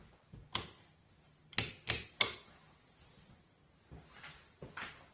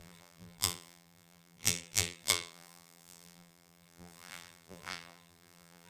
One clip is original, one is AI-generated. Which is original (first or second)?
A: first